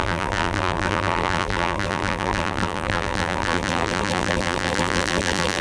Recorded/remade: remade